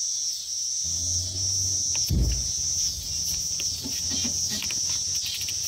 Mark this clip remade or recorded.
recorded